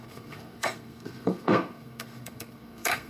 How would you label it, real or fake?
fake